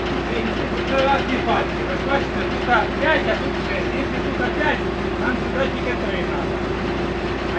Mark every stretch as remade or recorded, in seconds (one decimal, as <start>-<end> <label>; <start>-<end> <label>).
0.0-7.6 recorded